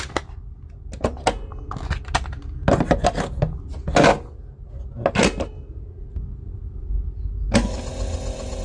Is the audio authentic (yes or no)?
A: yes